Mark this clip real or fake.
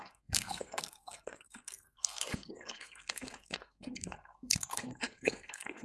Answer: fake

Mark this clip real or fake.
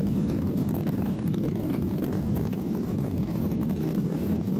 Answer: fake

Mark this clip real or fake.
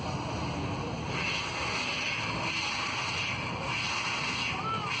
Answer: real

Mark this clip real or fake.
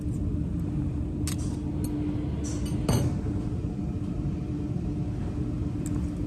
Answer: real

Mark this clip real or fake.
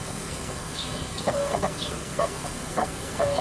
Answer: fake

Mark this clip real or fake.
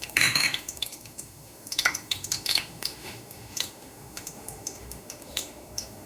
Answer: fake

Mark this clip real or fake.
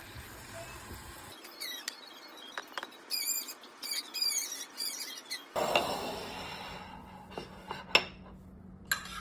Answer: real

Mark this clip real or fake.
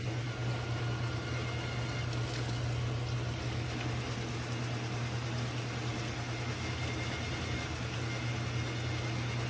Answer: real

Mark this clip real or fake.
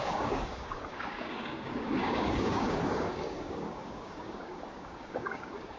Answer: fake